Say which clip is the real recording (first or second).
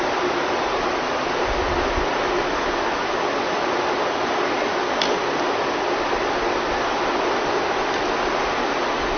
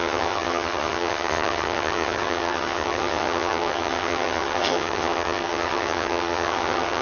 first